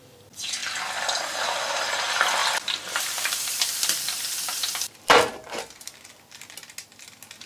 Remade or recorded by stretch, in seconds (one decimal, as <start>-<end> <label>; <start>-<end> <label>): 0.0-0.6 recorded; 0.6-1.9 remade; 1.9-2.4 recorded; 2.4-6.1 remade; 6.1-7.5 recorded